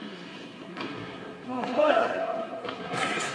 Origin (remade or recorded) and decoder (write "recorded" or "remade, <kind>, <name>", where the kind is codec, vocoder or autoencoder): remade, codec, SNAC